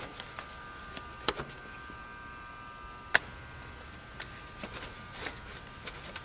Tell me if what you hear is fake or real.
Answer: real